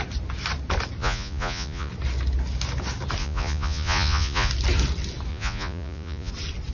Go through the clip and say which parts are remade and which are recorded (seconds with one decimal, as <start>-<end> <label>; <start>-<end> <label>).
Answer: 0.0-1.0 recorded; 1.0-1.9 remade; 1.9-3.2 recorded; 3.2-4.5 remade; 4.5-5.3 recorded; 5.3-6.3 remade; 6.3-6.7 recorded